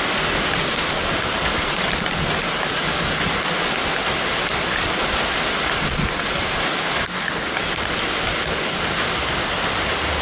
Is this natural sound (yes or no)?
yes